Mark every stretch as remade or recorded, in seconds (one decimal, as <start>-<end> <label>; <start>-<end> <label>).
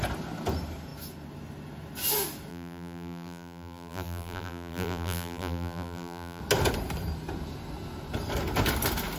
0.0-2.5 recorded; 2.5-6.4 remade; 6.4-9.2 recorded